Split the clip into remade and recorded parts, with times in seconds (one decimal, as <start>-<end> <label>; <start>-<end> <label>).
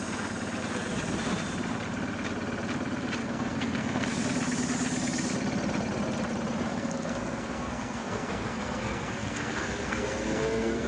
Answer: 0.0-3.2 recorded; 3.2-4.2 remade; 4.2-6.7 recorded; 6.7-10.9 remade